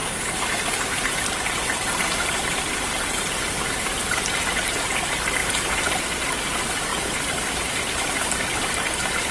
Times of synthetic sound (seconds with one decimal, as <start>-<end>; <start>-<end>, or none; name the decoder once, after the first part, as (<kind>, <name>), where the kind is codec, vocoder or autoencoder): 0.0-4.4 (vocoder, BigVGAN v2); 5.4-6.0; 6.9-7.9